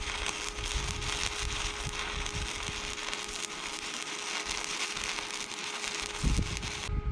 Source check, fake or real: real